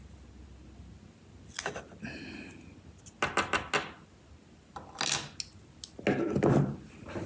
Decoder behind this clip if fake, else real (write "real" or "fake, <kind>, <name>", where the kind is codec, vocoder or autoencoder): real